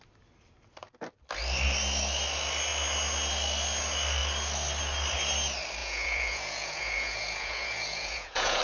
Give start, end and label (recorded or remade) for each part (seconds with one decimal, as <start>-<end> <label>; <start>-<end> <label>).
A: 0.0-5.8 recorded; 5.8-8.6 remade